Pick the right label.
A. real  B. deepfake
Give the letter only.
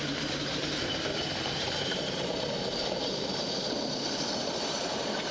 B